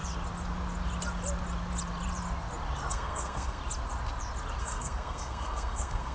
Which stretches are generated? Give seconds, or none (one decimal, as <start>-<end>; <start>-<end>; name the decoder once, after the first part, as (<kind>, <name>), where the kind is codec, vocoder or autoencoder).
2.9-3.6 (codec, SNAC); 4.6-6.1